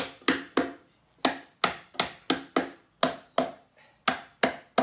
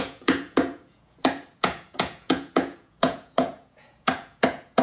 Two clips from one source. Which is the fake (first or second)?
second